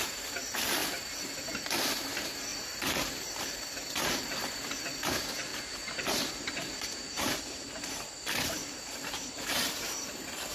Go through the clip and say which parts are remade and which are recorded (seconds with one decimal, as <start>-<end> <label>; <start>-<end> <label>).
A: 0.0-0.8 remade; 0.8-2.1 recorded; 2.1-10.5 remade